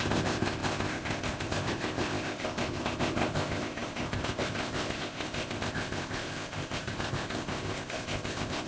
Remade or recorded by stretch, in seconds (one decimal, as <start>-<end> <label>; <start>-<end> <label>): 0.0-8.7 remade